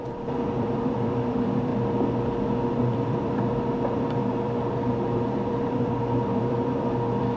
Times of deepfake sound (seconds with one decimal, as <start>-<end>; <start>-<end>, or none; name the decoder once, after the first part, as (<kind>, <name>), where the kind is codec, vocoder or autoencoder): 0.0-1.7 (vocoder, BigVGAN v2); 2.9-7.4